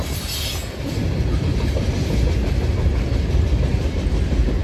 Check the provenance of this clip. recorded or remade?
recorded